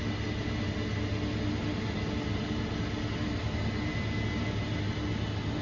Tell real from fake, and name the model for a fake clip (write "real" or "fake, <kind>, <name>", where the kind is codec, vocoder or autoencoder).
real